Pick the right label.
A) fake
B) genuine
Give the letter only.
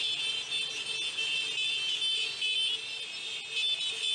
B